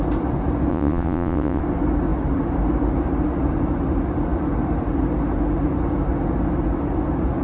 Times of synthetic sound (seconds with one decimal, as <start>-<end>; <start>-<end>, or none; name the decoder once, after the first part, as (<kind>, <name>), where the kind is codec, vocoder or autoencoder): 0.7-1.6 (vocoder, WaveNeXt)